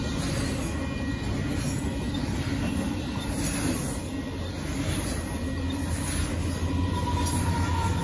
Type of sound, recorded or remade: recorded